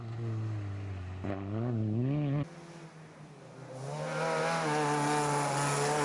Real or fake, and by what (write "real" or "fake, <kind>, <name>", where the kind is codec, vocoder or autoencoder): real